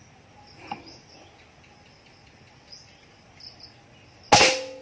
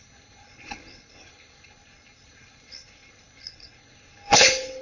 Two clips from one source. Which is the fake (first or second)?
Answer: second